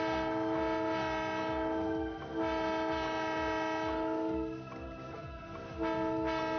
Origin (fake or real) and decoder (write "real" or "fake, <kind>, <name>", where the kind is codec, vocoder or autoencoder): real